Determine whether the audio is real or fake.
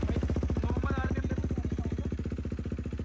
real